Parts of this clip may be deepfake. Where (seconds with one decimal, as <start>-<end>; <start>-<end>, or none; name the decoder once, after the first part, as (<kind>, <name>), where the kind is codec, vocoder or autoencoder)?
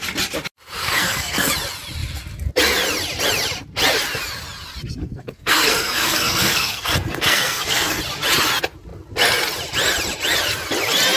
0.8-1.5 (codec, SNAC); 5.0-8.0